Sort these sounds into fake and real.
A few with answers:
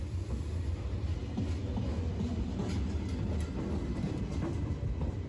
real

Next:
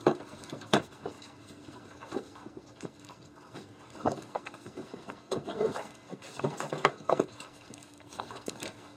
fake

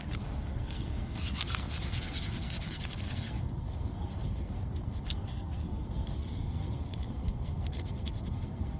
fake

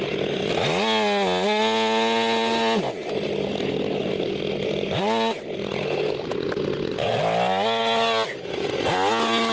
real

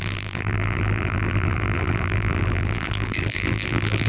fake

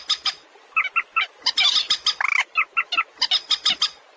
real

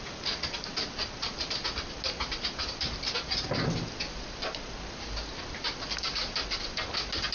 real